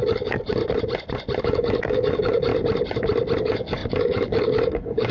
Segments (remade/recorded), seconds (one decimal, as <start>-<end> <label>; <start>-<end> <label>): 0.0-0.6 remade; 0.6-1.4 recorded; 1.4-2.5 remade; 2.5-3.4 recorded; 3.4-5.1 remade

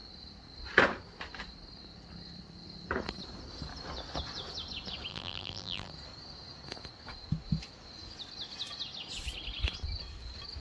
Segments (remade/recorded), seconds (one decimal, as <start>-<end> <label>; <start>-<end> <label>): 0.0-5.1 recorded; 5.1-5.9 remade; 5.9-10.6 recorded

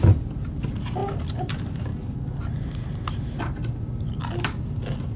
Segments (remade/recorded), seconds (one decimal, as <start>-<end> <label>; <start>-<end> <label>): 0.0-5.2 recorded

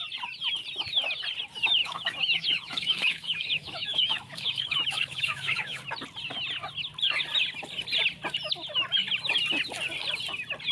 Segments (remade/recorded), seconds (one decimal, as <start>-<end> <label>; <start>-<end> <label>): 0.0-1.8 recorded; 1.8-5.8 remade; 5.8-10.7 recorded

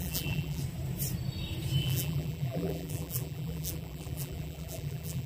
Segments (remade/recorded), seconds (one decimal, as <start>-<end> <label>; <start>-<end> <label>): 0.0-0.6 remade; 0.6-1.8 recorded; 1.8-5.3 remade

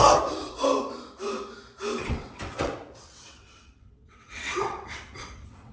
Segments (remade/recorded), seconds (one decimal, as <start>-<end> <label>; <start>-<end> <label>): 0.0-2.0 recorded; 2.0-5.7 remade

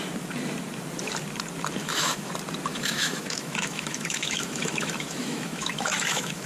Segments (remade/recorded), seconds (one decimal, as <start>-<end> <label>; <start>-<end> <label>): 0.0-1.8 recorded; 1.8-2.3 remade; 2.3-2.7 recorded; 2.7-6.5 remade

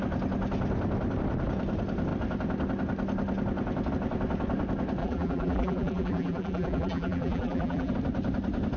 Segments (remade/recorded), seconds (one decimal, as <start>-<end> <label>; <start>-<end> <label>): 0.0-5.0 recorded; 5.0-7.9 remade; 7.9-8.8 recorded